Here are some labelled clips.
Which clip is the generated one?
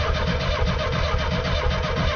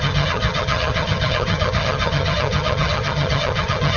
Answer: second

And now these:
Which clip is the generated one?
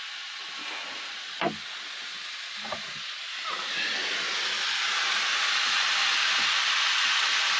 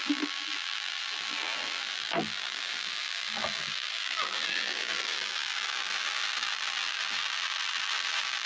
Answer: second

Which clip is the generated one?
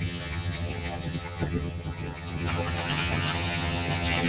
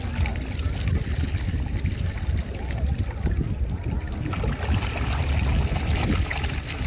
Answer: first